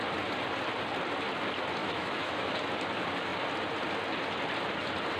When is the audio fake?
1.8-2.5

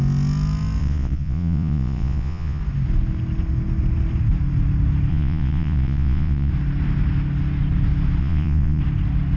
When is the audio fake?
0.8-2.6; 5.1-6.5; 8.2-8.8

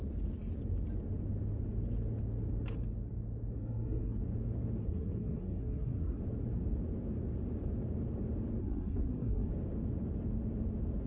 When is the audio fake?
3.6-4.2; 4.8-6.2; 8.6-9.5

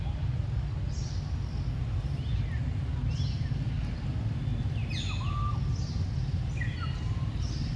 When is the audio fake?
none